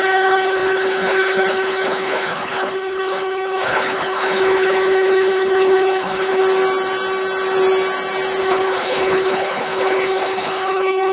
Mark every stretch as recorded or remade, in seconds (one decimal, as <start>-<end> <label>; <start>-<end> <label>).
0.0-6.4 remade; 6.4-8.4 recorded; 8.4-11.1 remade